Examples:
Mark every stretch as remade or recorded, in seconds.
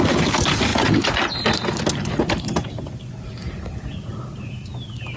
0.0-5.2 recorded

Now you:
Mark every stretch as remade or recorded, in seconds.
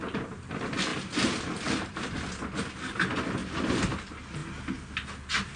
0.0-5.6 recorded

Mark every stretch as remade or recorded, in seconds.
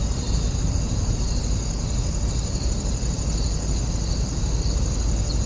0.0-5.5 recorded